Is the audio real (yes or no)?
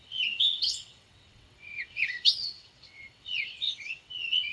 no